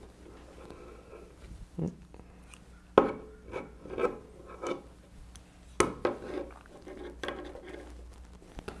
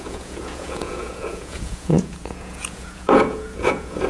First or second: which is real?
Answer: first